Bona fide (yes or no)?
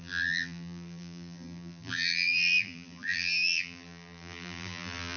no